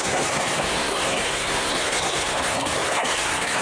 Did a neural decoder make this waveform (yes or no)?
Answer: yes